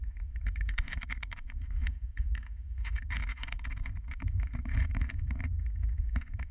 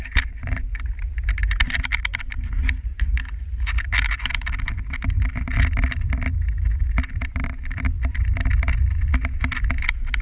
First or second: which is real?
second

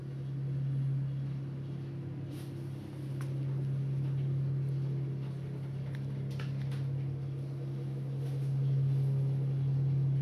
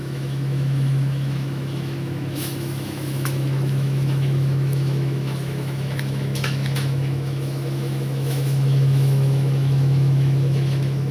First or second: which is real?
first